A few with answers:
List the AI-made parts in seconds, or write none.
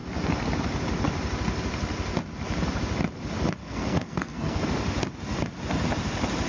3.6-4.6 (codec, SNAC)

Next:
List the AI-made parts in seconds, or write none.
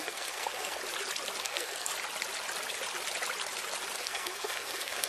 0.0-0.8 (codec, SNAC); 1.4-1.9; 4.0-5.1